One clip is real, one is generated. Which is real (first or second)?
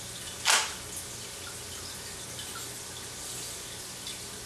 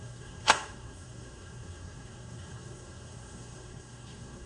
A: first